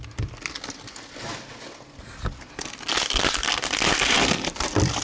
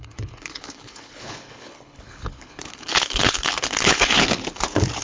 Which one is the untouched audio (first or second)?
first